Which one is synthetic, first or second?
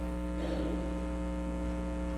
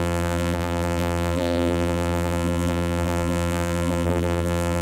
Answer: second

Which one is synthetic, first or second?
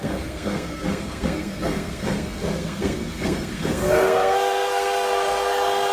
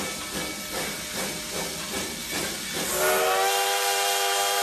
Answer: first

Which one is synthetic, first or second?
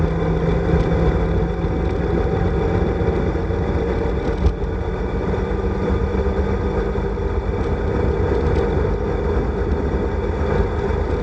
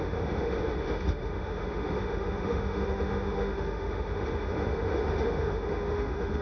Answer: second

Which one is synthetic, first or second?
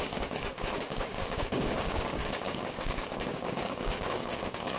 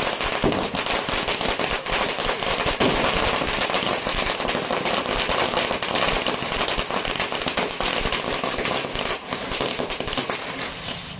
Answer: first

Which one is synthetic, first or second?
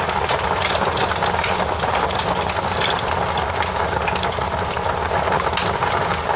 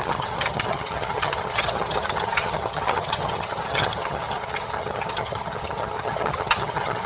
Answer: second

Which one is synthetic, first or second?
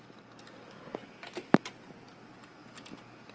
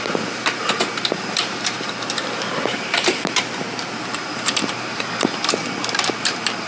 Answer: second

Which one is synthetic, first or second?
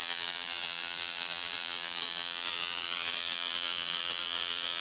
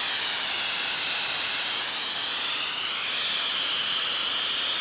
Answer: first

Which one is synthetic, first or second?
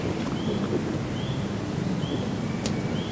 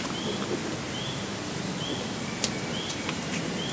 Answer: second